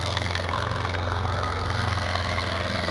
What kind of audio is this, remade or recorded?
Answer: remade